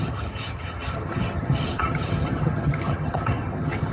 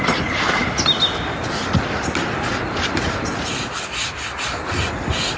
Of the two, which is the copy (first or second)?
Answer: first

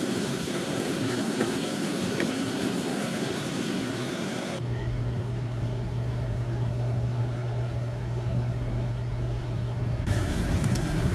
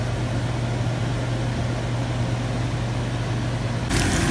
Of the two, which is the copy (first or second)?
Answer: first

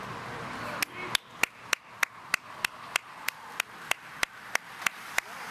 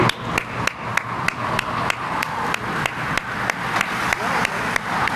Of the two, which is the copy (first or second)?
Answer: first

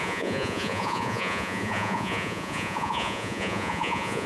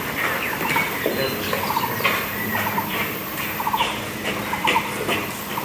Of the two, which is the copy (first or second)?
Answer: first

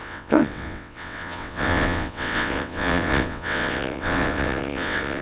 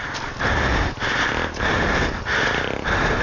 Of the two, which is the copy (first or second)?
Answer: first